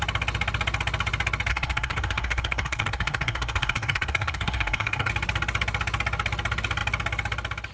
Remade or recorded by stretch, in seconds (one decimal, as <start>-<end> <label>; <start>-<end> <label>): 0.0-1.5 recorded; 1.5-5.1 remade; 5.1-7.7 recorded